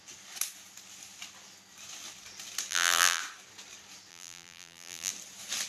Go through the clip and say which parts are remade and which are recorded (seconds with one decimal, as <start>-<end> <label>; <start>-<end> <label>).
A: 0.0-2.7 recorded; 2.7-3.2 remade; 3.2-4.1 recorded; 4.1-5.1 remade; 5.1-5.7 recorded

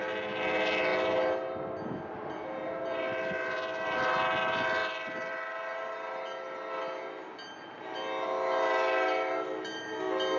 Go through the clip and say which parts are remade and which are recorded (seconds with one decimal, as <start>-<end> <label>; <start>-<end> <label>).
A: 0.0-10.4 recorded

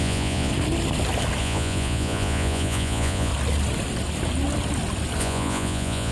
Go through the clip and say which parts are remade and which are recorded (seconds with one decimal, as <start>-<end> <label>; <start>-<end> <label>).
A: 0.0-0.5 remade; 0.5-1.4 recorded; 1.4-3.3 remade; 3.3-5.2 recorded; 5.2-6.1 remade

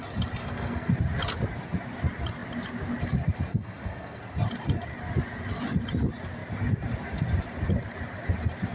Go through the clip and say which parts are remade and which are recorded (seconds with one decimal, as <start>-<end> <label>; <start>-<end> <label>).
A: 0.0-0.4 recorded; 0.4-0.9 remade; 0.9-3.5 recorded; 3.5-4.2 remade; 4.2-8.7 recorded

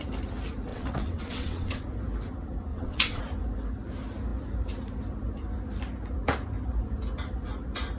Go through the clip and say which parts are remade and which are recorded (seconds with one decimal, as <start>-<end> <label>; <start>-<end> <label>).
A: 0.0-0.7 recorded; 0.7-1.8 remade; 1.8-2.7 recorded; 2.7-3.2 remade; 3.2-8.0 recorded